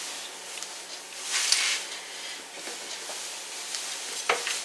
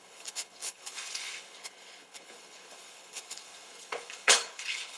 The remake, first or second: second